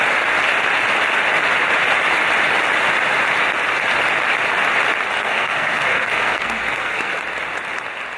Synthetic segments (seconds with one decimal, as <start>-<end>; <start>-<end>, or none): 5.2-7.2